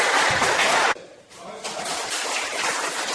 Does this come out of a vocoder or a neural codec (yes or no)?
no